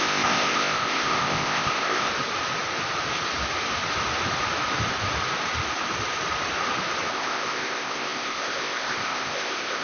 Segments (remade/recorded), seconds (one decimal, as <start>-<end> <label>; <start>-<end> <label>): 0.0-2.1 remade; 2.1-7.1 recorded; 7.1-9.8 remade